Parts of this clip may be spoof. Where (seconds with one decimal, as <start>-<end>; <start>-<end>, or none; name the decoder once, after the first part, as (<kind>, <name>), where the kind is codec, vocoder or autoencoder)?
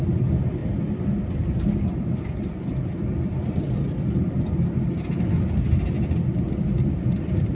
none